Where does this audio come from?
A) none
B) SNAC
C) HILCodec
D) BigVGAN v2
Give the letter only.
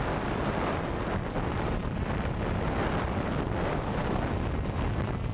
A